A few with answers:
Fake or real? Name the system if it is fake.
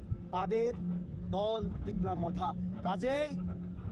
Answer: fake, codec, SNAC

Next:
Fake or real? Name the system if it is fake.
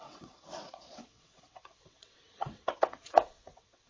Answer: fake, vocoder, WaveNeXt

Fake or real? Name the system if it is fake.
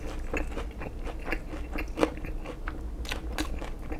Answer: real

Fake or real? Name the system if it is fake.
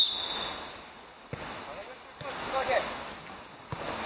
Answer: real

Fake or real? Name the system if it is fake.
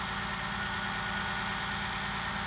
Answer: real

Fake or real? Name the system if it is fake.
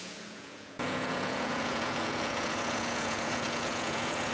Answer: fake, vocoder, Vocos